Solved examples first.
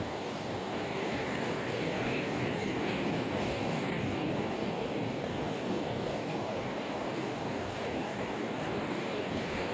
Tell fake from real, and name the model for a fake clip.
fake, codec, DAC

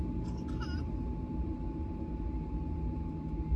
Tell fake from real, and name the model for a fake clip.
real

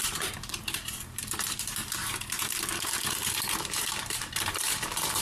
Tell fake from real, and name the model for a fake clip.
fake, vocoder, BigVGAN v2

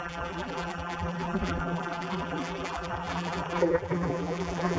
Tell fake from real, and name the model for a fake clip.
fake, vocoder, BigVGAN v2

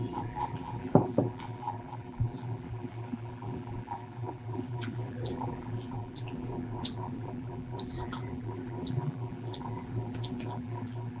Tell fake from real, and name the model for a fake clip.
fake, vocoder, BigVGAN v2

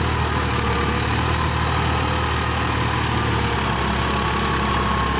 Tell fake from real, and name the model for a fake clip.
real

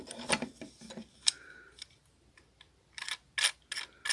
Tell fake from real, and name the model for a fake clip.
real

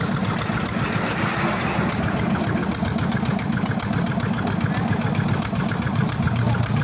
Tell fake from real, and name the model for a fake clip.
real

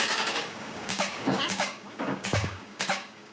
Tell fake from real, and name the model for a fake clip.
fake, codec, DAC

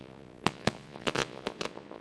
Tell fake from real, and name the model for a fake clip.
fake, vocoder, Vocos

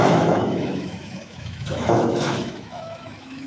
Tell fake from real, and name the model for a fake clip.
fake, autoencoder, DAC-VAE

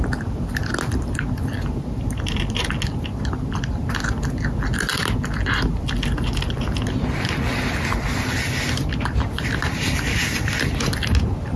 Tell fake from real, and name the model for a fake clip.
real